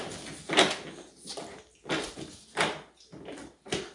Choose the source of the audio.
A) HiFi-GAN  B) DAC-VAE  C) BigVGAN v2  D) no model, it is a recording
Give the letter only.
D